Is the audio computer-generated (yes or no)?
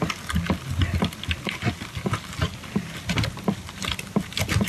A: no